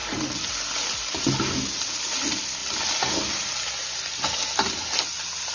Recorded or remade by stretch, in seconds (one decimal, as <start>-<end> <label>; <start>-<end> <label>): 0.0-5.5 recorded